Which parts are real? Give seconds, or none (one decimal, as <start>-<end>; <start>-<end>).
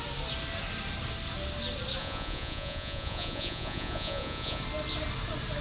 0.0-2.0; 4.6-5.6